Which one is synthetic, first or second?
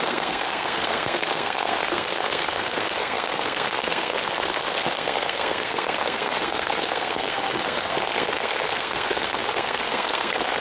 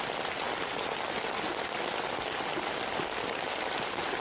first